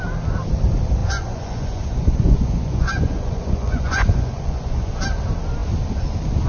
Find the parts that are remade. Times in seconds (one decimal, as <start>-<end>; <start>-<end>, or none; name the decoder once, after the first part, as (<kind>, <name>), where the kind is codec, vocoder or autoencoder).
1.0-4.9 (vocoder, Vocos)